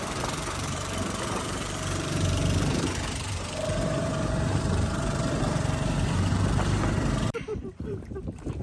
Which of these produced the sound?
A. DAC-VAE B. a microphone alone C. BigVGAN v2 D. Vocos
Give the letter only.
C